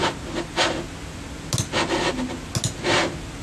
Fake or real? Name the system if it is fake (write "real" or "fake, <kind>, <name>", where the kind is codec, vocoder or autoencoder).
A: real